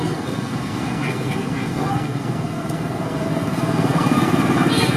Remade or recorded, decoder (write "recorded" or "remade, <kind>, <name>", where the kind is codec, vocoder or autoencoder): remade, codec, SNAC